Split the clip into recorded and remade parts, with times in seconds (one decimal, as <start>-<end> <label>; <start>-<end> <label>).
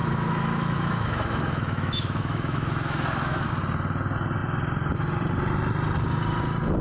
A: 0.0-3.5 remade; 3.5-6.8 recorded